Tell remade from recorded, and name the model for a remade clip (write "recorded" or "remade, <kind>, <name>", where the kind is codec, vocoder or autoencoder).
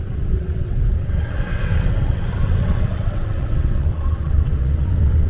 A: remade, vocoder, WaveNeXt